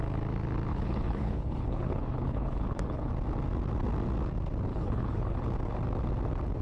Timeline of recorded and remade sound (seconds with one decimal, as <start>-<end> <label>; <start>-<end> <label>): 0.0-0.7 recorded; 0.7-3.1 remade; 3.1-4.7 recorded; 4.7-5.4 remade; 5.4-6.6 recorded